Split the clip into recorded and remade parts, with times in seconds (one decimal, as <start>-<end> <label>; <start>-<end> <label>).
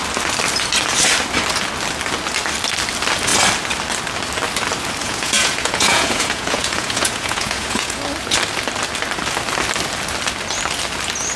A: 0.0-5.0 recorded; 5.0-8.0 remade; 8.0-11.4 recorded